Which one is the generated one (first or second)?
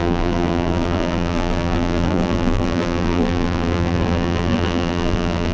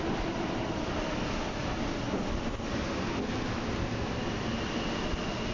first